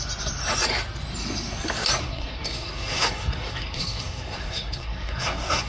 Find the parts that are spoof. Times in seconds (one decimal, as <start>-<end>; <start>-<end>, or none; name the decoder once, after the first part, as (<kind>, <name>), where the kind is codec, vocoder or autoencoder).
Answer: 2.0-5.7 (codec, SNAC)